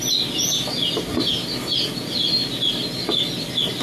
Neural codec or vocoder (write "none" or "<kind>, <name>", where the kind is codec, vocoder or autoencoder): none